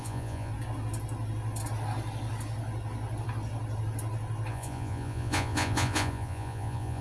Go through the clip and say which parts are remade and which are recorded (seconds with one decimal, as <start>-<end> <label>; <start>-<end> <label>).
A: 0.0-0.5 remade; 0.5-4.5 recorded; 4.5-7.0 remade

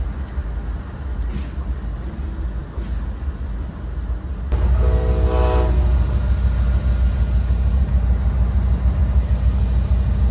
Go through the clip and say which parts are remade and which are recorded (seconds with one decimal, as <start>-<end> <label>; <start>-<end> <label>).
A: 0.0-10.3 recorded

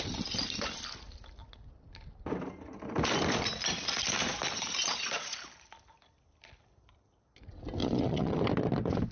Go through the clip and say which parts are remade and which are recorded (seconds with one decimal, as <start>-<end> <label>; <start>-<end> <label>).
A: 0.0-4.8 recorded; 4.8-5.4 remade; 5.4-7.8 recorded; 7.8-8.4 remade; 8.4-9.1 recorded